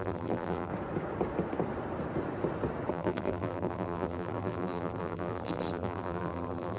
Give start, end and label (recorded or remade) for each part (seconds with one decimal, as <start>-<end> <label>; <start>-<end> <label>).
0.0-0.7 remade; 0.7-2.9 recorded; 2.9-6.8 remade